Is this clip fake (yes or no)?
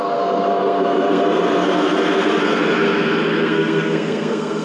yes